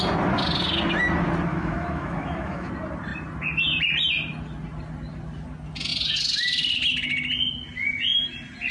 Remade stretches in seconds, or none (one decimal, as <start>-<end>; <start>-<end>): 1.5-2.7